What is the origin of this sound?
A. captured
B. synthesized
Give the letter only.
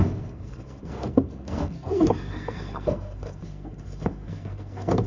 B